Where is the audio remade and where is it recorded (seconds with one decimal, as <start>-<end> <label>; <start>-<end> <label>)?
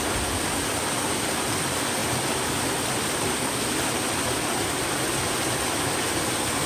0.0-6.7 recorded